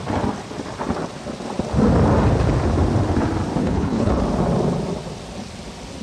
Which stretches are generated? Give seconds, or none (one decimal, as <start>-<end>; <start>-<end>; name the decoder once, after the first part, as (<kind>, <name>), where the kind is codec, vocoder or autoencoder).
3.6-4.2 (codec, HILCodec)